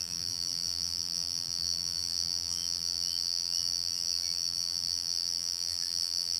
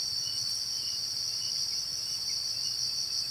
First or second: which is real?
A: second